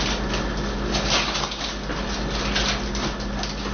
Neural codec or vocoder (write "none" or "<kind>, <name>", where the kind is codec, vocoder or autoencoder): none